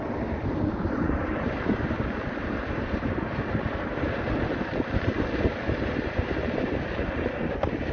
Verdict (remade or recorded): remade